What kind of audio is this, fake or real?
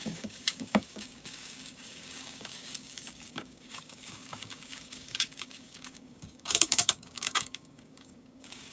fake